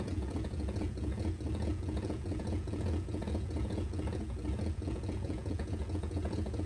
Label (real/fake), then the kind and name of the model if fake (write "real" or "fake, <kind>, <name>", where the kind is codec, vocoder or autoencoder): fake, vocoder, Vocos